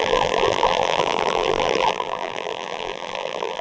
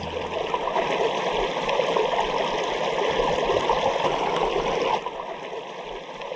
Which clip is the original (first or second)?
second